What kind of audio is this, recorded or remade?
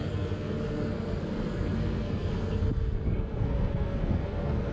remade